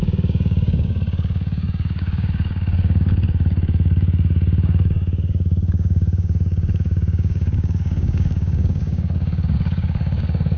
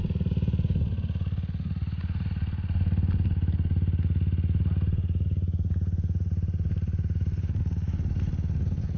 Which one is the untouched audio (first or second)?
second